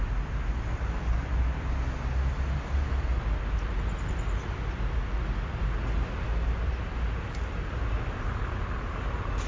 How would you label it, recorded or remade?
recorded